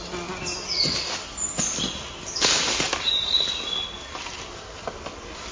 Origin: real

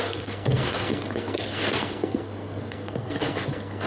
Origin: fake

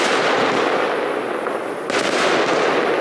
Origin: real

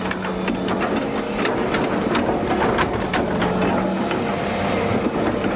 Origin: real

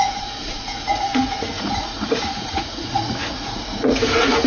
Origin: fake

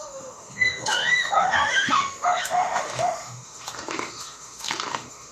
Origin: fake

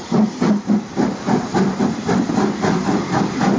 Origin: real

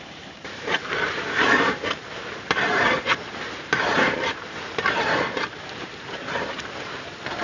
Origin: fake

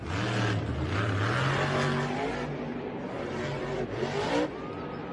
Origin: real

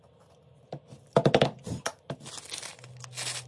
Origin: real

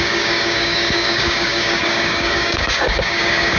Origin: fake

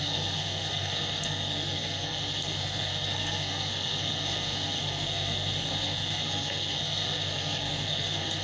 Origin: fake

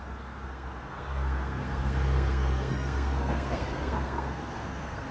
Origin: fake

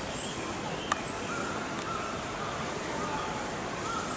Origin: real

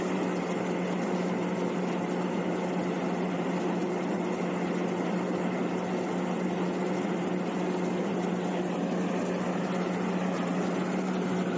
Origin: real